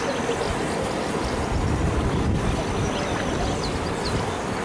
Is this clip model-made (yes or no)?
no